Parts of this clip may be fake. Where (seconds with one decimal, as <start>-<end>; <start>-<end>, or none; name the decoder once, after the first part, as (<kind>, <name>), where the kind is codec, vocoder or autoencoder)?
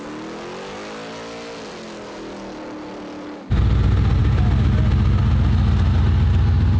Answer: none